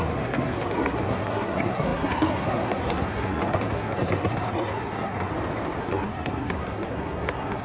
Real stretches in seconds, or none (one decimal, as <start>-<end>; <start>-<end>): 5.3-5.8